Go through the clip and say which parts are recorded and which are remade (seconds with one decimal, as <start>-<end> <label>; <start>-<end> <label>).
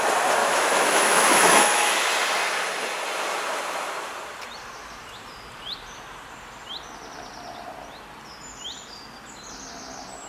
0.0-0.4 recorded; 0.4-2.1 remade; 2.1-10.3 recorded